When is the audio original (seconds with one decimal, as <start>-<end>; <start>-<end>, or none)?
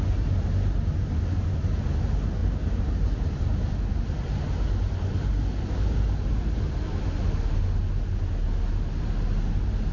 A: 0.0-9.9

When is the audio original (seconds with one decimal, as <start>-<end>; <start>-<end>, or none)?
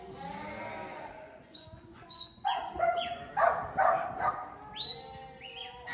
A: 0.0-0.9; 3.3-5.9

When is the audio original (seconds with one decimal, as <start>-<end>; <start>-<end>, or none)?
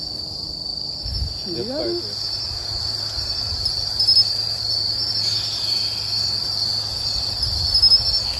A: 0.0-8.4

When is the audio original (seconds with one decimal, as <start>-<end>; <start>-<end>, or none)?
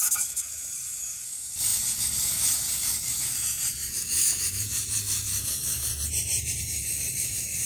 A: 5.9-6.6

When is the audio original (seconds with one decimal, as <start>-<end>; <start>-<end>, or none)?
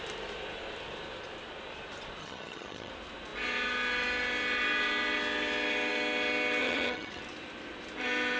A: 0.0-2.2; 2.9-6.6; 7.2-8.4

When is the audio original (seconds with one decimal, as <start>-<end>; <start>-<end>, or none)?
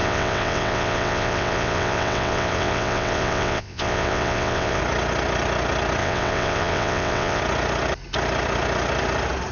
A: 4.8-6.0; 7.4-9.5